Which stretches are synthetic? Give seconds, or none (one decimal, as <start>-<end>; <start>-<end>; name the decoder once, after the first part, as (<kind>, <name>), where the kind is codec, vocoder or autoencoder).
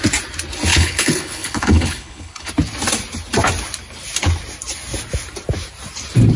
0.7-2.5 (codec, HILCodec)